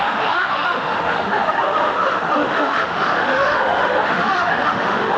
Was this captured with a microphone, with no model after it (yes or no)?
no